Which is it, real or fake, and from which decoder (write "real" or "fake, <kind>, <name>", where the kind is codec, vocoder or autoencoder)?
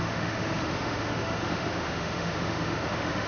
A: fake, autoencoder, DAC-VAE